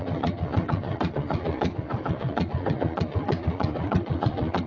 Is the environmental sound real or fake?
fake